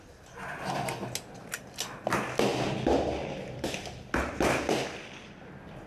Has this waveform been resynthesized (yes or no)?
no